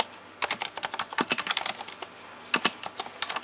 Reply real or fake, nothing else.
real